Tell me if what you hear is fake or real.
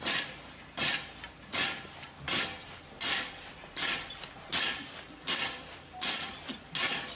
real